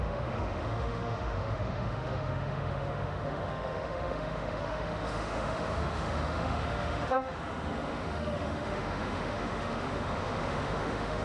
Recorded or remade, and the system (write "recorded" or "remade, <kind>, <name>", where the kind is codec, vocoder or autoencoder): remade, autoencoder, DAC-VAE